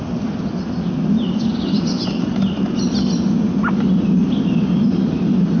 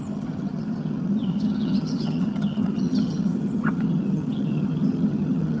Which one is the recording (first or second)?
first